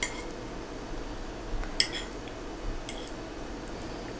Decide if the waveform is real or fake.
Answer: real